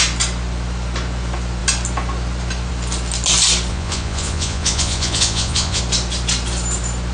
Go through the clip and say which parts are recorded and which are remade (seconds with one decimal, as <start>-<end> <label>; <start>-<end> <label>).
0.0-3.7 recorded; 3.7-5.8 remade; 5.8-7.1 recorded